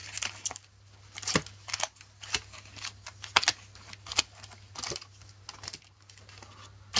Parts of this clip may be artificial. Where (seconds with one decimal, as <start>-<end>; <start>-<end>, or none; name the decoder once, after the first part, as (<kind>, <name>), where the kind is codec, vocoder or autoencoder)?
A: none